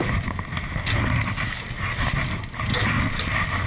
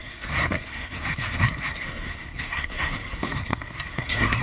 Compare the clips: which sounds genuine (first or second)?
first